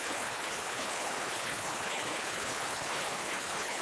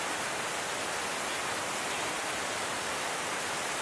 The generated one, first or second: first